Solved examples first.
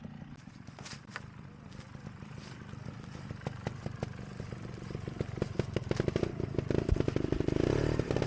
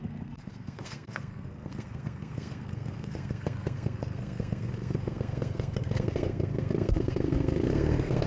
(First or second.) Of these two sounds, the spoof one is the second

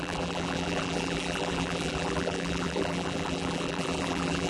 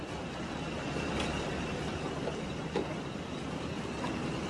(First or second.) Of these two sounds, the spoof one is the first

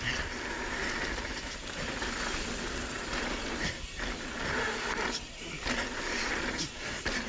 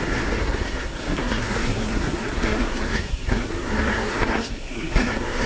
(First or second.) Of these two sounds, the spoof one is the second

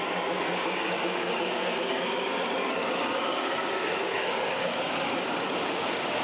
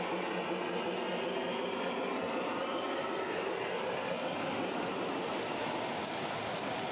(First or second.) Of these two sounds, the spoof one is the first